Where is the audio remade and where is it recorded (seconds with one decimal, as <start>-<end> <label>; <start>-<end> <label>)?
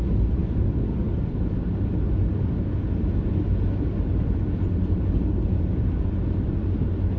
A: 0.0-7.2 recorded